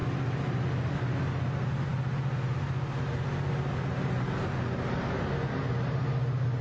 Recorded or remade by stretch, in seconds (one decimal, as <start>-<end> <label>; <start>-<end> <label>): 0.0-6.6 recorded